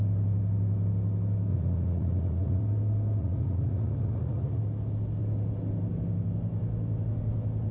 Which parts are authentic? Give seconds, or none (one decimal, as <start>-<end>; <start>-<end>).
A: 0.0-1.5; 2.6-3.2; 4.6-7.7